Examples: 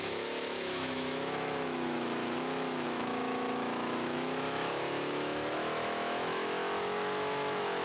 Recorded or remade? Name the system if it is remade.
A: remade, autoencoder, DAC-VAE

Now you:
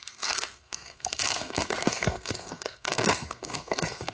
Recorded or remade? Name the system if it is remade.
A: remade, codec, SNAC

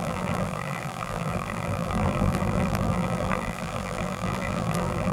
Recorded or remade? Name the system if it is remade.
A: remade, vocoder, BigVGAN v2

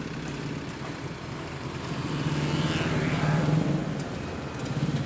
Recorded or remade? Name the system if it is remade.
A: recorded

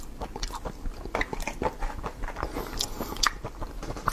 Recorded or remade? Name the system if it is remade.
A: remade, vocoder, BigVGAN v2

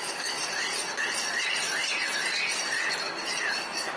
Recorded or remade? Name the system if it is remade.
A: remade, vocoder, BigVGAN v2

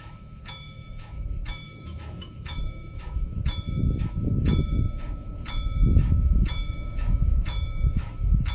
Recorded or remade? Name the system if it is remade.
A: remade, autoencoder, DAC-VAE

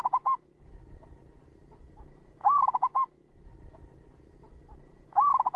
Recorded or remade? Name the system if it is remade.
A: recorded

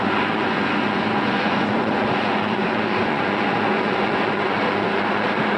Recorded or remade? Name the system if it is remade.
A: remade, vocoder, Vocos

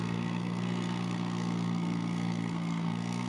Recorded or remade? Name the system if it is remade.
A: remade, codec, SNAC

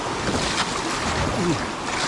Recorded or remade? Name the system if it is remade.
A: recorded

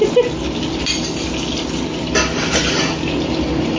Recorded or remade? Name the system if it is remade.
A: recorded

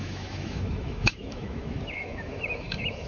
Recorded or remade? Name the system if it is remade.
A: remade, autoencoder, DAC-VAE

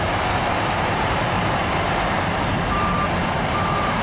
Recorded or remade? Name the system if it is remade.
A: remade, vocoder, BigVGAN v2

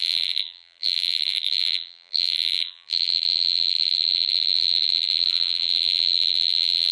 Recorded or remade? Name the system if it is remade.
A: remade, vocoder, BigVGAN v2